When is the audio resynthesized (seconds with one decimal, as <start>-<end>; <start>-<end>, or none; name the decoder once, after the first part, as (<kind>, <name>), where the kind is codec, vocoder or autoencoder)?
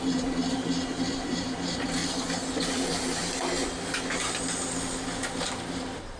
0.0-2.0 (vocoder, BigVGAN v2); 2.7-3.2; 5.4-6.2